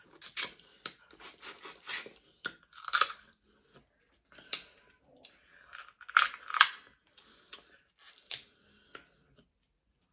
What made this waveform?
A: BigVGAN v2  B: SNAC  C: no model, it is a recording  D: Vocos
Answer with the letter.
C